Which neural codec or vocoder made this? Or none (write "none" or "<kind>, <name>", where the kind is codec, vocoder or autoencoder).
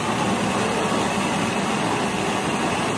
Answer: none